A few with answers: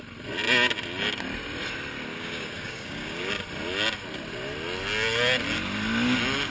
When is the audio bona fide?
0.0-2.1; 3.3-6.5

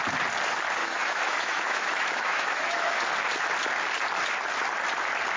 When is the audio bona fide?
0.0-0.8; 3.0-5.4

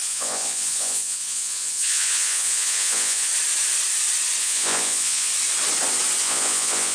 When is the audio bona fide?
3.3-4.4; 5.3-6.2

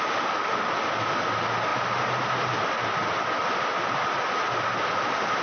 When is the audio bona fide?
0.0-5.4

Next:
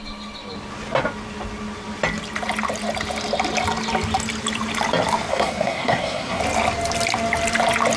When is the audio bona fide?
0.0-5.3; 6.4-8.0

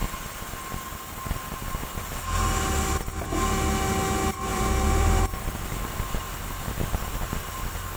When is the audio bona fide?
0.0-4.5; 6.3-8.0

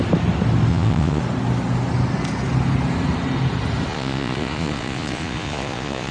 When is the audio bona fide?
0.0-0.7; 1.2-3.9